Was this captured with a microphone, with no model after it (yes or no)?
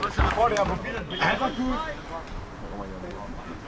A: yes